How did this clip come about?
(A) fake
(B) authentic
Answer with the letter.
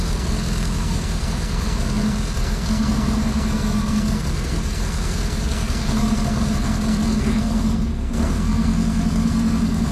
A